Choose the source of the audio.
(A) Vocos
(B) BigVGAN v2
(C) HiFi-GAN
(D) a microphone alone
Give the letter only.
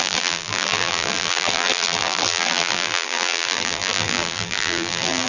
B